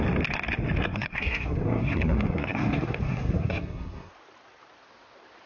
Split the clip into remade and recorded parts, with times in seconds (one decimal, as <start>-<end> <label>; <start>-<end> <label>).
0.0-0.8 recorded; 0.8-4.1 remade; 4.1-5.5 recorded